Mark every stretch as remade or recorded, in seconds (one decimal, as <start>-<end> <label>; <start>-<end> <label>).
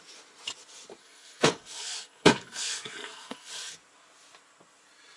0.0-1.0 recorded; 1.0-3.7 remade; 3.7-5.2 recorded